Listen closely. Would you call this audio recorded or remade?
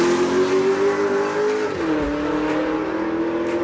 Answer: recorded